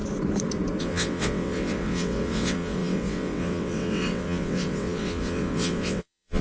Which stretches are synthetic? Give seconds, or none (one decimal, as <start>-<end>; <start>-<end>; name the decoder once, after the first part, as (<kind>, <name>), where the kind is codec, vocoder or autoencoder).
0.8-6.4 (vocoder, WaveNeXt)